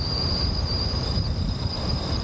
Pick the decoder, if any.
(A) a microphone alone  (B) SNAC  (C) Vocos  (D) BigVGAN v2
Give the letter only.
D